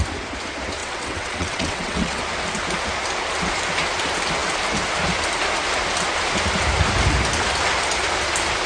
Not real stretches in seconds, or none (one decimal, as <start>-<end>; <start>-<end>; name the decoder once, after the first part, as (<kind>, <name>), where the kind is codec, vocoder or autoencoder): 0.8-2.2 (vocoder, WaveNeXt)